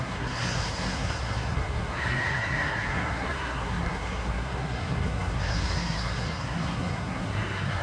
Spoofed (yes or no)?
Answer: yes